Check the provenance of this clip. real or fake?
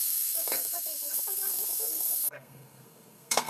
fake